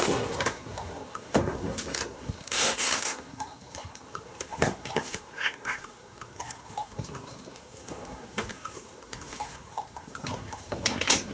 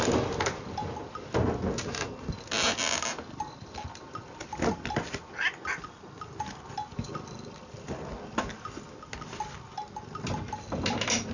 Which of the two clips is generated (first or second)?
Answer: first